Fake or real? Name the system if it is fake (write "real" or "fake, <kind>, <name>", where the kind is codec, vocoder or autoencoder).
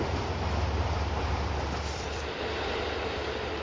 fake, vocoder, BigVGAN v2